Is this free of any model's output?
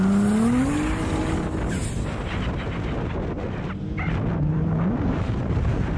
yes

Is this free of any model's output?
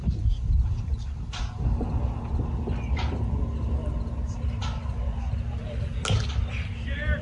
yes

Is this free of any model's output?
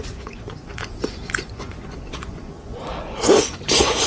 no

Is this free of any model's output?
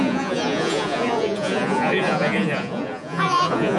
no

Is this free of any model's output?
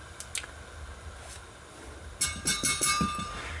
yes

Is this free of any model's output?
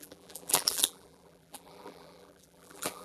no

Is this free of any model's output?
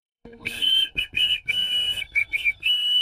no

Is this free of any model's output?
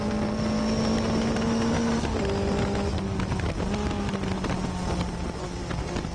yes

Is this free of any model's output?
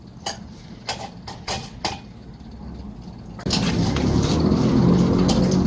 yes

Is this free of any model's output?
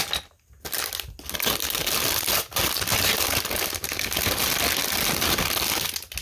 yes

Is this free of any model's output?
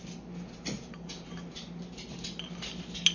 yes